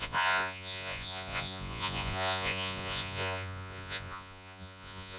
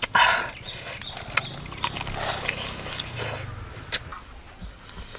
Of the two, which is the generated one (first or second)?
first